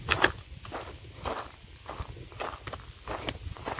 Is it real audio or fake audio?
real